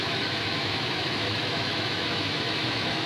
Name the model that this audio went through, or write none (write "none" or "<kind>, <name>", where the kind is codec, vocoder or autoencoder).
autoencoder, DAC-VAE